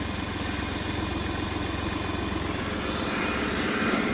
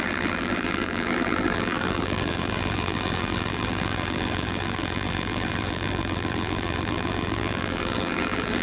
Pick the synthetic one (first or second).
second